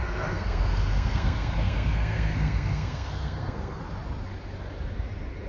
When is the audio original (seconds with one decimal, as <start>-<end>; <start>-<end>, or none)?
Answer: 3.8-5.5